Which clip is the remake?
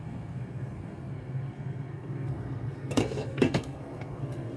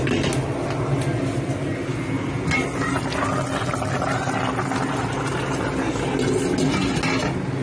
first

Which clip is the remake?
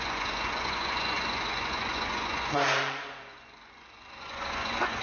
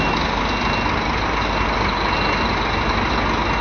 first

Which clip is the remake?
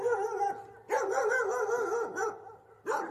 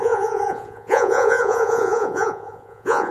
second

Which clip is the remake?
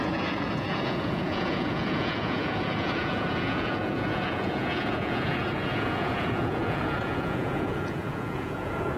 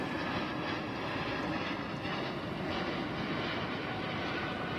first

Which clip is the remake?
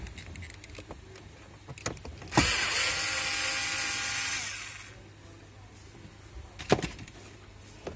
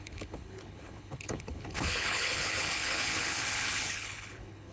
second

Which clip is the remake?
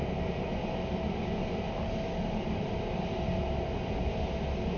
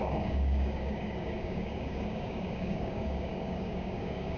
second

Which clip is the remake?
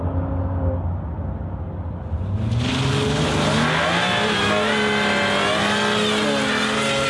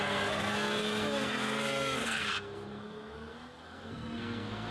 second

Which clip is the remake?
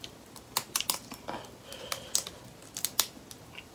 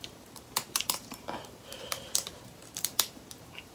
second